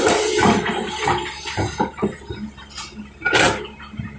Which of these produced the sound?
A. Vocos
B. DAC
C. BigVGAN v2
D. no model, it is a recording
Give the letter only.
C